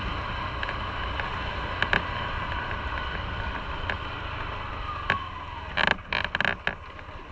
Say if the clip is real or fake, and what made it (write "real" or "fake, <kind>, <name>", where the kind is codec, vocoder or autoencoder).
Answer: real